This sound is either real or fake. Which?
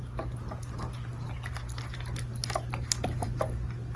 real